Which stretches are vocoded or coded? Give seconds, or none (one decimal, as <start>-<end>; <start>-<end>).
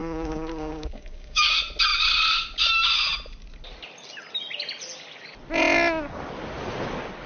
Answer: 0.0-1.5